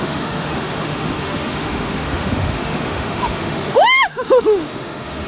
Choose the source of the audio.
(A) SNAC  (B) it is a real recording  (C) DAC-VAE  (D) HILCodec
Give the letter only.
C